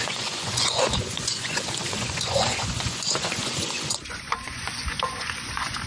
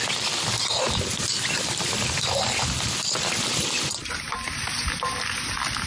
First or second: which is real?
second